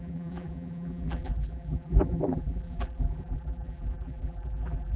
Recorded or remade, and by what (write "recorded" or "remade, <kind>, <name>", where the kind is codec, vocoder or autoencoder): remade, vocoder, BigVGAN v2